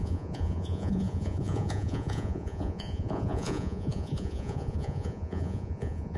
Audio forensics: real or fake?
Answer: fake